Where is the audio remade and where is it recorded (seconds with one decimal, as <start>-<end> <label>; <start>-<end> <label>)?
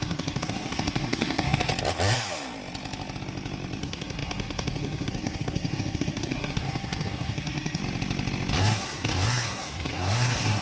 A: 0.0-1.7 remade; 1.7-3.8 recorded; 3.8-7.8 remade; 7.8-8.6 recorded; 8.6-10.6 remade